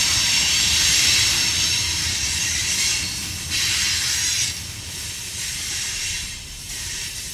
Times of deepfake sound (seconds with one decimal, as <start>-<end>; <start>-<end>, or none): 0.0-2.6; 6.1-7.3